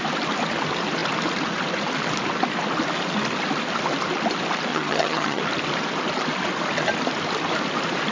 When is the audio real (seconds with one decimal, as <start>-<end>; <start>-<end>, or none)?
0.0-4.7; 5.4-8.1

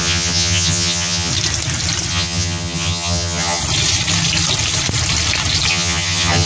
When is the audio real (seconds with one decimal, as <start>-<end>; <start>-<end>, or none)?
1.3-2.1; 3.6-5.7

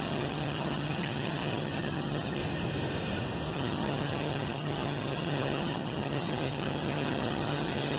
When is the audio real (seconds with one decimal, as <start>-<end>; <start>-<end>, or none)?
2.4-3.5

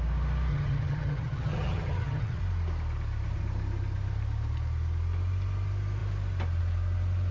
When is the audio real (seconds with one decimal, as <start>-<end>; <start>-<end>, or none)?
0.0-0.5; 2.4-7.3

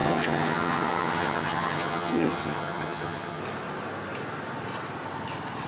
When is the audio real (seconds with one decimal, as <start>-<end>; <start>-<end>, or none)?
3.4-5.7